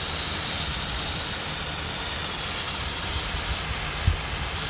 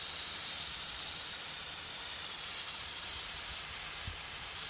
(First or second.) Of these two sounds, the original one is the first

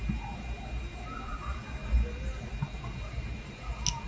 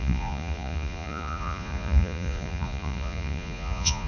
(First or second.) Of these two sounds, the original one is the first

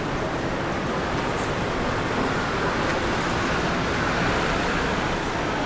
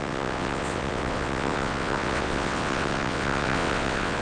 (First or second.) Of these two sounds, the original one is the first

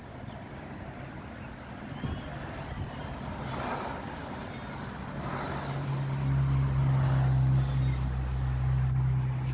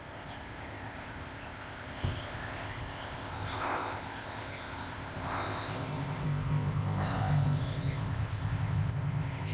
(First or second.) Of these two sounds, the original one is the first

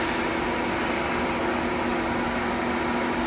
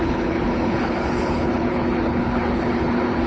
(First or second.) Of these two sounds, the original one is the first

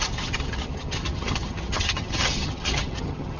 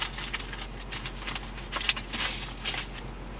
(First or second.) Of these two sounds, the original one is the second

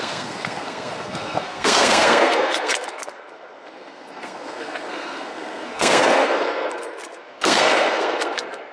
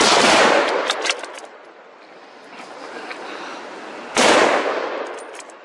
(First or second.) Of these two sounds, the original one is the second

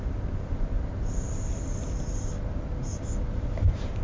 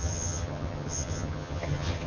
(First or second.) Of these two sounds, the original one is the first